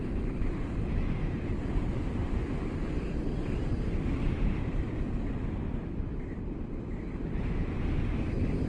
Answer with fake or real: real